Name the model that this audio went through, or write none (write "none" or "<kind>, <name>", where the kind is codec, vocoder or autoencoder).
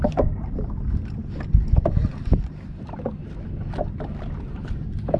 none